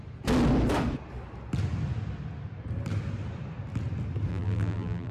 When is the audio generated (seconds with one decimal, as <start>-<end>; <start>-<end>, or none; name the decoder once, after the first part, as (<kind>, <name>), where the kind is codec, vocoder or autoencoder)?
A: 4.3-5.1 (vocoder, BigVGAN v2)